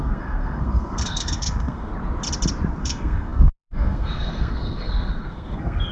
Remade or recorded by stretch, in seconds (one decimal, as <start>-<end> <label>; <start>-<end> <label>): 0.0-1.9 remade; 1.9-2.8 recorded; 2.8-5.9 remade